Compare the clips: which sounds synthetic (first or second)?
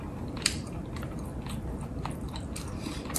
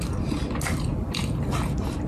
first